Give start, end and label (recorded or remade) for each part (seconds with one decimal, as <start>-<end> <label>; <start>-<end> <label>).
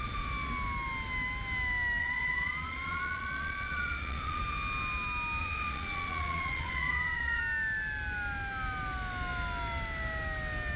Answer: 0.0-2.0 recorded; 2.0-4.4 remade; 4.4-5.4 recorded; 5.4-7.4 remade; 7.4-10.8 recorded